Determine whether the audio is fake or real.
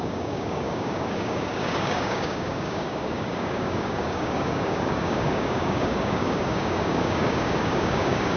fake